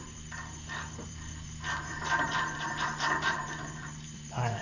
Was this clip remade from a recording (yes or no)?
yes